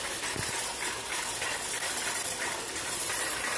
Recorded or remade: recorded